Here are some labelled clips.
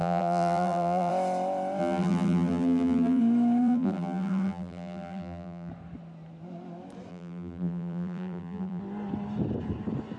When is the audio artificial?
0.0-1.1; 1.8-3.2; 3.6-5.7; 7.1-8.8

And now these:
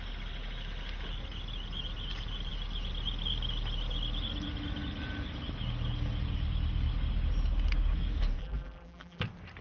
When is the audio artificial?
8.4-9.2

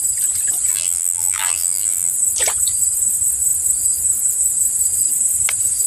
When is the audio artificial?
0.7-2.1

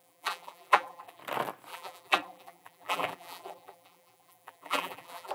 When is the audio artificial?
0.0-1.2; 1.7-5.3

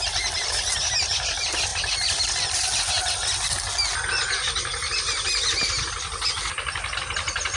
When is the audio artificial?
none

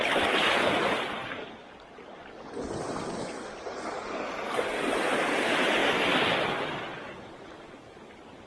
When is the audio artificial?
none